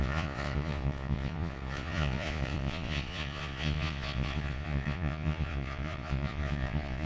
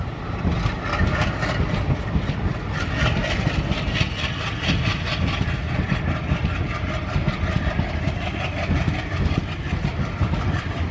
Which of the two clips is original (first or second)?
second